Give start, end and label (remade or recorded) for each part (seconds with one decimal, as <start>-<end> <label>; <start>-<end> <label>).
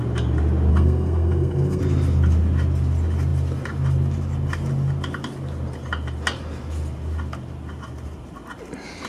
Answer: 0.0-0.7 recorded; 0.7-1.8 remade; 1.8-9.1 recorded